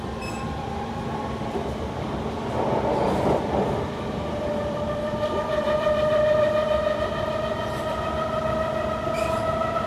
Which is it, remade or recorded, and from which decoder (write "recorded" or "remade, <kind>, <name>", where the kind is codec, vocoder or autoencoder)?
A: remade, vocoder, BigVGAN v2